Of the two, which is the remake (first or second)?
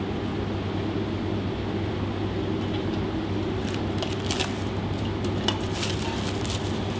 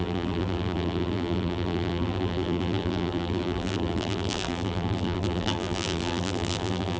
second